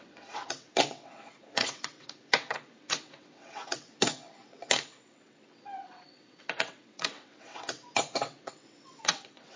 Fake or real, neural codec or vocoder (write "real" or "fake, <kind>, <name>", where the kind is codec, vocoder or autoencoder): fake, vocoder, WaveNeXt